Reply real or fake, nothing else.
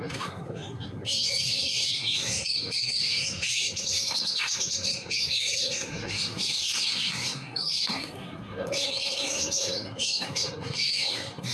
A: fake